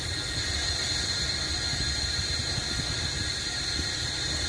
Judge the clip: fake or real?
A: real